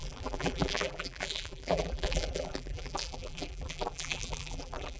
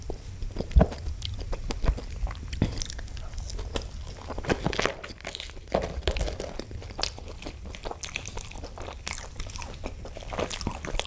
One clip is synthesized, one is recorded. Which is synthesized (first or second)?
first